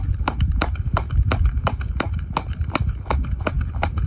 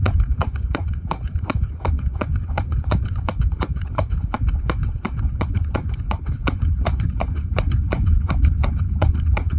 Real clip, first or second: first